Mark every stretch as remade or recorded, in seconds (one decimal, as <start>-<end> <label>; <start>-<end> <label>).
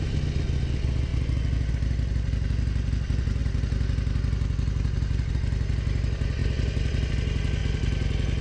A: 0.0-8.4 recorded